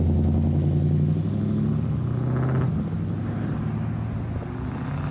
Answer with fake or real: real